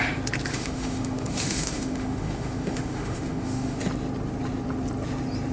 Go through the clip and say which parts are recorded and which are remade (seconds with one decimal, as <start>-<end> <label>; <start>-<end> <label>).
0.0-0.5 recorded; 0.5-3.8 remade; 3.8-5.5 recorded